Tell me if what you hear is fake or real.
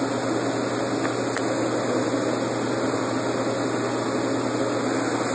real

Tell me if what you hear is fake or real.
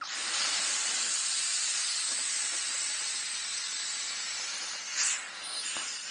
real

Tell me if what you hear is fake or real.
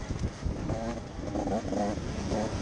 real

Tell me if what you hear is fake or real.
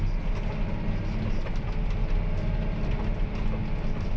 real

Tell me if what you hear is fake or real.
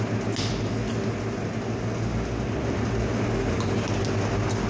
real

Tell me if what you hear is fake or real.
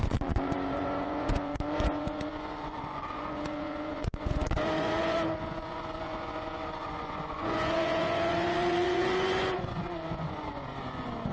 fake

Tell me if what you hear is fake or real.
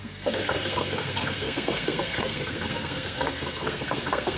fake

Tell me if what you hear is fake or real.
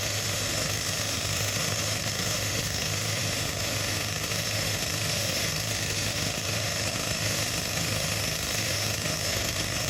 fake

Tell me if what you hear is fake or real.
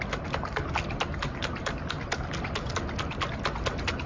real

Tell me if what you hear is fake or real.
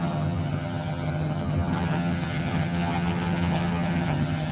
fake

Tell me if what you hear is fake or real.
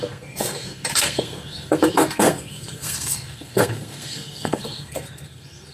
fake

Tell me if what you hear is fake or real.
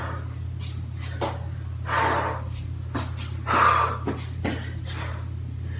real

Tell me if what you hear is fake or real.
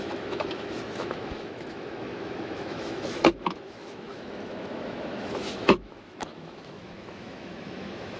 fake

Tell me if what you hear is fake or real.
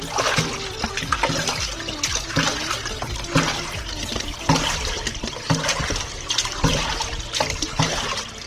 real